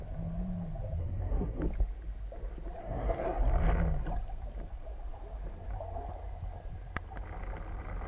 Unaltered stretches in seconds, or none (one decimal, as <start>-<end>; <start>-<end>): 0.0-1.0; 1.6-2.8; 3.4-8.1